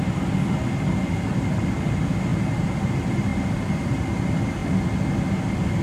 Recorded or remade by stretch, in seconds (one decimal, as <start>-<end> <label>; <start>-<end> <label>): 0.0-2.3 recorded; 2.3-2.8 remade; 2.8-3.3 recorded; 3.3-4.0 remade; 4.0-5.8 recorded